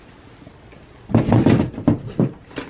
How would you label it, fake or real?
real